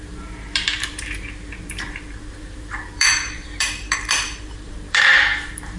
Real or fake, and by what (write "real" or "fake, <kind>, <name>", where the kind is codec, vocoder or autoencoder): fake, vocoder, BigVGAN v2